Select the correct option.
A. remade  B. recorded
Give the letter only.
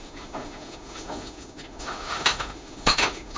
A